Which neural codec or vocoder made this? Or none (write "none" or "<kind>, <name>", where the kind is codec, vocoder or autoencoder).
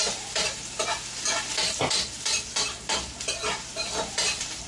none